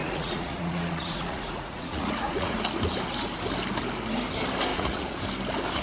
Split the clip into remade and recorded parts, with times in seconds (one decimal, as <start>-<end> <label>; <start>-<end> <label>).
0.0-2.6 remade; 2.6-4.7 recorded; 4.7-5.2 remade; 5.2-5.8 recorded